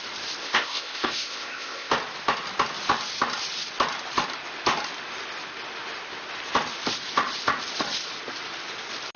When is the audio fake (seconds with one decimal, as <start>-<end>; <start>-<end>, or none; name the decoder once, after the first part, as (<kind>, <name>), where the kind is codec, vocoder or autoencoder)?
0.4-1.9 (codec, ZipCodec)